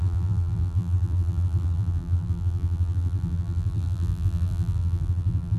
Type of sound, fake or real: fake